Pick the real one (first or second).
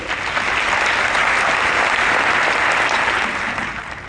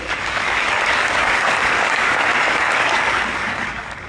first